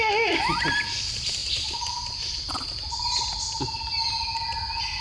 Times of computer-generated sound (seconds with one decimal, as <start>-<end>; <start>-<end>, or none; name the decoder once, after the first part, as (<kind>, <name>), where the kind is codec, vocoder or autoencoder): none